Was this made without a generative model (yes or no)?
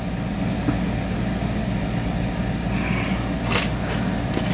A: yes